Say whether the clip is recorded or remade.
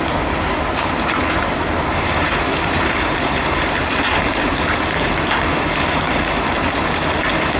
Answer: remade